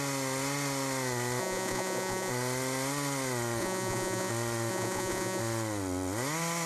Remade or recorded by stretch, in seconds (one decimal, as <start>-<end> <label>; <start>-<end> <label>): 0.0-1.4 recorded; 1.4-2.3 remade; 2.3-3.6 recorded; 3.6-4.3 remade; 4.3-4.7 recorded; 4.7-5.4 remade; 5.4-6.7 recorded